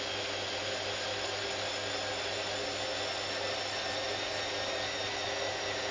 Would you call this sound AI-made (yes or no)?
no